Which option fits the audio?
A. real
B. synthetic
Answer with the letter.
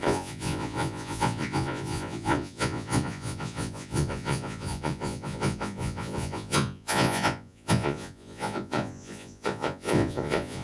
B